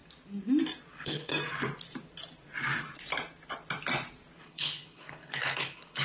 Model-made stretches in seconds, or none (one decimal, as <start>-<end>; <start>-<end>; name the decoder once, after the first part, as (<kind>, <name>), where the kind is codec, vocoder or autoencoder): 0.9-1.3 (codec, HILCodec); 4.4-6.0